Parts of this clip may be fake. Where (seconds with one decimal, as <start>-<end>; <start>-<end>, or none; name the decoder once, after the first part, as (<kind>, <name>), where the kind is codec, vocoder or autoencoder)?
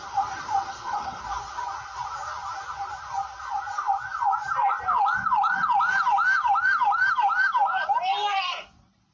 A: 0.7-1.2 (codec, HILCodec)